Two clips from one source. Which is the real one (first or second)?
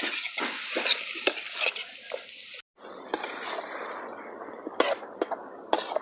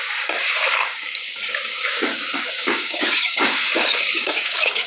first